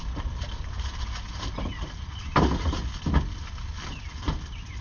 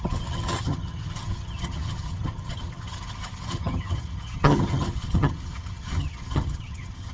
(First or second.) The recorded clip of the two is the first